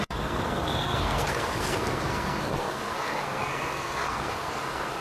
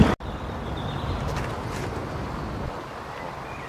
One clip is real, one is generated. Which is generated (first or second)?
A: first